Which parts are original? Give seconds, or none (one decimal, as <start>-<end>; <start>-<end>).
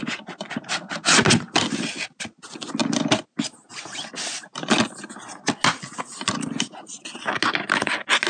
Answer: 0.0-8.3